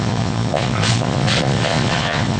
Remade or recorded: remade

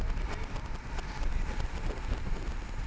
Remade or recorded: recorded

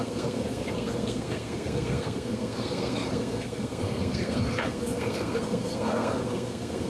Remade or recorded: remade